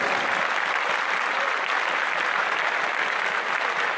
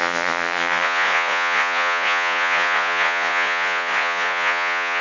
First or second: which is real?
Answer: first